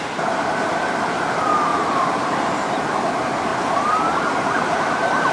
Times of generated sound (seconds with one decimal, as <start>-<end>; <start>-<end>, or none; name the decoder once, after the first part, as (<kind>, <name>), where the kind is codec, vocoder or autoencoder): 3.5-5.3 (vocoder, BigVGAN v2)